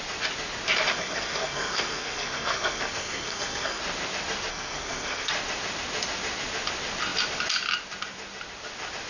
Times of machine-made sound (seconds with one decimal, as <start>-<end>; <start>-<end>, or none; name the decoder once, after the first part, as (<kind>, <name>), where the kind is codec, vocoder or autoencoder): 0.9-3.8 (codec, SNAC); 4.5-5.3